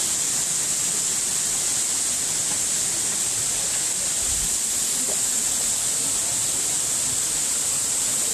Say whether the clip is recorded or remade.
recorded